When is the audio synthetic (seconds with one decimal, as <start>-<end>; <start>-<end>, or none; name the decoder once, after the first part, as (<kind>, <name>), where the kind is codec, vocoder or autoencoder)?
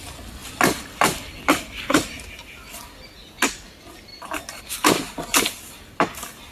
0.4-1.6 (vocoder, BigVGAN v2); 4.1-4.6